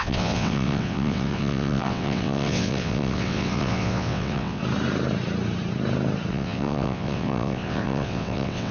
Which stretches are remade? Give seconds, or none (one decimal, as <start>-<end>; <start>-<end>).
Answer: 0.0-4.6; 6.3-8.7